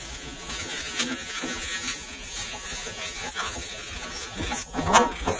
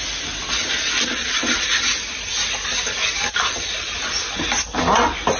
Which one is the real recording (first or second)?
second